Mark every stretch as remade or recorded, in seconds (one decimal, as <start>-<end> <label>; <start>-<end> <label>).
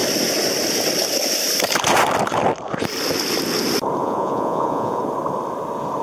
0.0-4.0 recorded; 4.0-5.0 remade; 5.0-6.0 recorded